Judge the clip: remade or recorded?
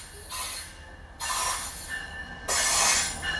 recorded